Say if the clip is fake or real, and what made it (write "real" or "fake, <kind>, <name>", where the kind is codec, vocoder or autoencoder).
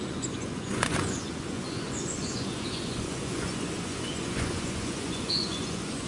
fake, vocoder, Vocos